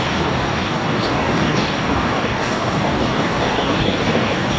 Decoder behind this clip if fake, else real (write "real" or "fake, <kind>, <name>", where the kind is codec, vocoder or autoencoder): fake, codec, DAC